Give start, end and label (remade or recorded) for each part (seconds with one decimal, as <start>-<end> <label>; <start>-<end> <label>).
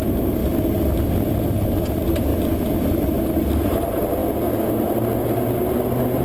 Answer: 0.0-0.4 remade; 0.4-1.4 recorded; 1.4-2.3 remade; 2.3-3.2 recorded; 3.2-4.2 remade; 4.2-6.2 recorded